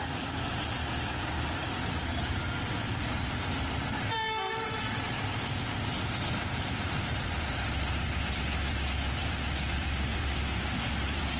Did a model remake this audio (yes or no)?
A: yes